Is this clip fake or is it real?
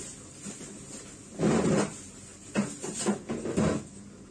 real